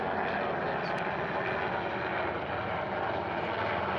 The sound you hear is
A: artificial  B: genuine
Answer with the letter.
B